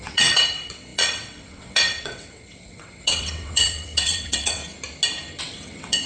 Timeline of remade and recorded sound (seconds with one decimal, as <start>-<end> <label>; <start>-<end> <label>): 0.0-4.6 remade; 4.6-5.4 recorded; 5.4-6.1 remade

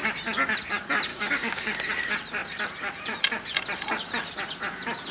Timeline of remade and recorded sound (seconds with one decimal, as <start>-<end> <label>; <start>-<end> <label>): 0.0-1.1 recorded; 1.1-1.9 remade; 1.9-5.1 recorded

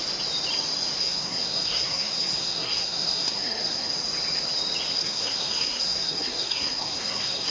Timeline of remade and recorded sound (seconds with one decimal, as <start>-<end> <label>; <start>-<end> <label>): 0.0-1.0 recorded; 1.0-3.9 remade; 3.9-5.0 recorded; 5.0-7.5 remade

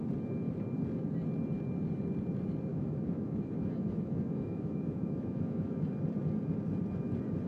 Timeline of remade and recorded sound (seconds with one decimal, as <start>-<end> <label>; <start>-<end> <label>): 0.0-2.7 recorded; 2.7-5.9 remade; 5.9-7.5 recorded

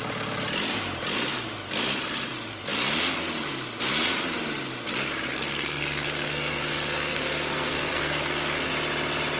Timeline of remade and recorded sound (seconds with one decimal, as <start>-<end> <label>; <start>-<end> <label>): 0.0-5.3 recorded; 5.3-8.7 remade; 8.7-9.4 recorded

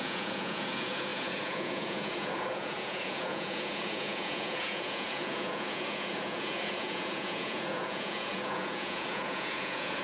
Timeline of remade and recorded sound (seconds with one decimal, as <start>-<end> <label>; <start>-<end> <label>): 0.0-10.0 remade

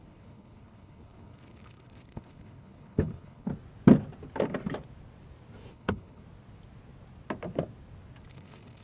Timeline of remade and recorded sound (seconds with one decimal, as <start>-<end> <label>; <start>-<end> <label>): 0.0-3.5 remade; 3.5-5.7 recorded; 5.7-6.2 remade; 6.2-8.3 recorded; 8.3-8.8 remade